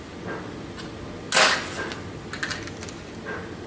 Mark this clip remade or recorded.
recorded